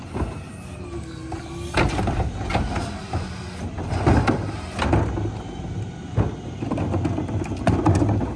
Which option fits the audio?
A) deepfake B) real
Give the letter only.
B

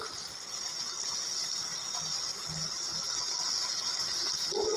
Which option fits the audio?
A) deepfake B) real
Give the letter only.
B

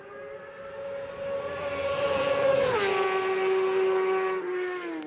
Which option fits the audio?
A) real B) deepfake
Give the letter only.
A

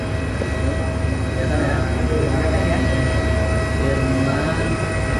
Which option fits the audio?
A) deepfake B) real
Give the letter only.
B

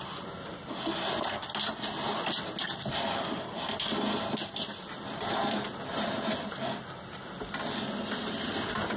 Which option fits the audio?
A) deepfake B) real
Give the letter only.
B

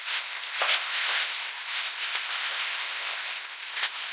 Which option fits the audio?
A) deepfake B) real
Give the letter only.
A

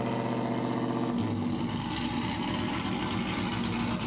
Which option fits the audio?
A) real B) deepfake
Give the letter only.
A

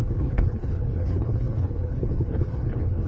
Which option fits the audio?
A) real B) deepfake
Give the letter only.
B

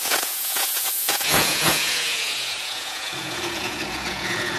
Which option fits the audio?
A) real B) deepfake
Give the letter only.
B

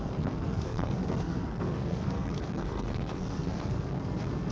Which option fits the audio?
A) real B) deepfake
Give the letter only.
B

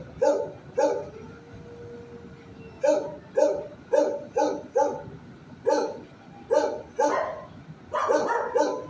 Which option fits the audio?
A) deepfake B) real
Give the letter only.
B